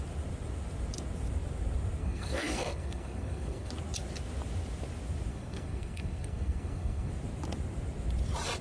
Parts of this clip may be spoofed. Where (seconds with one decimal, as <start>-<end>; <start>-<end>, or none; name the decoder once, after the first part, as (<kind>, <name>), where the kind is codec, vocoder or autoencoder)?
2.0-3.7 (codec, SNAC); 5.3-7.1